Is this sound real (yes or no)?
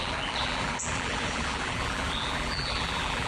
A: no